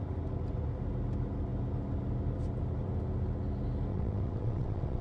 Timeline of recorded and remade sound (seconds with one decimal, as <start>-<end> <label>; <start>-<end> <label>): 0.0-3.9 recorded; 3.9-5.0 remade

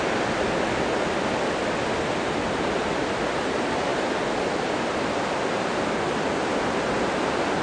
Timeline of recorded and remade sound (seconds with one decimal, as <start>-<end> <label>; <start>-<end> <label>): 0.0-7.6 recorded

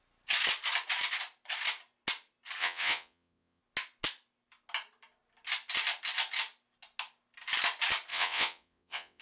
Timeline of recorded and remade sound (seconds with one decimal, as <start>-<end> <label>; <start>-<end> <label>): 0.0-2.6 recorded; 2.6-3.6 remade; 3.6-8.1 recorded; 8.1-9.2 remade

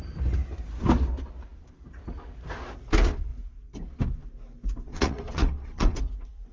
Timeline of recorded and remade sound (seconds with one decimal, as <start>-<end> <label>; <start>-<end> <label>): 0.0-4.9 recorded; 4.9-6.0 remade; 6.0-6.5 recorded